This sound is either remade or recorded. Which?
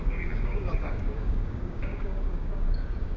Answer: remade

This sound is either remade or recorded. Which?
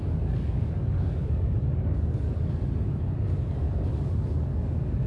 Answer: remade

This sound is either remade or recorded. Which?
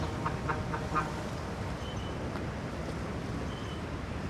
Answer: recorded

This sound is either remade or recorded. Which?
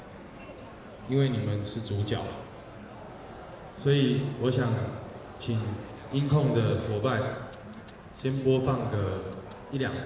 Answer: recorded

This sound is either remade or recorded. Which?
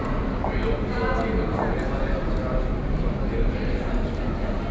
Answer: recorded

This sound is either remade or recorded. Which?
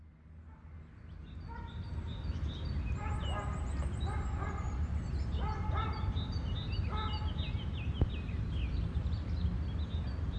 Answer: recorded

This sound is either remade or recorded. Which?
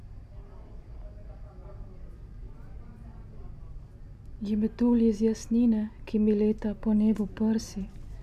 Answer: recorded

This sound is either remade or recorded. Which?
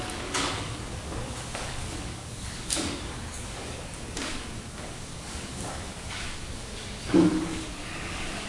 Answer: remade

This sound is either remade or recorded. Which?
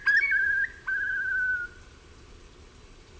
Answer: recorded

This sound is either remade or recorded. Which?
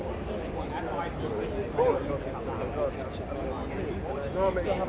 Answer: recorded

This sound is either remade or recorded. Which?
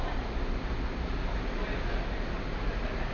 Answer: recorded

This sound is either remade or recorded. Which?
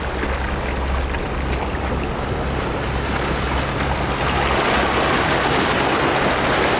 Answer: recorded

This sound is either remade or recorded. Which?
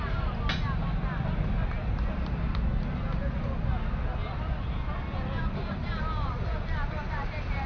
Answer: recorded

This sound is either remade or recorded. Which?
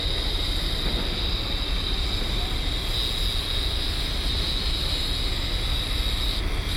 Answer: recorded